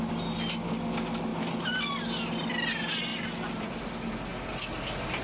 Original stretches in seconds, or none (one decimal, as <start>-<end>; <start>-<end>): 0.0-5.2